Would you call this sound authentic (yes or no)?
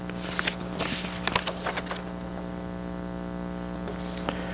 yes